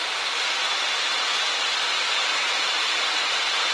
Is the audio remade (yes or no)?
no